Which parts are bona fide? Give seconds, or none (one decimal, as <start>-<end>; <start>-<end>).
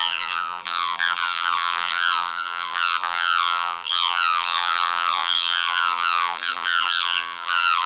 none